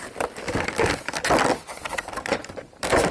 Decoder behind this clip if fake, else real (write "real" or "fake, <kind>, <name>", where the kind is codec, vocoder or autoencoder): real